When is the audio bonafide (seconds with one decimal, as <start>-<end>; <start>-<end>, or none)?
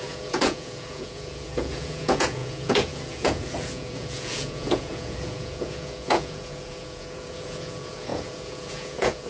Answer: none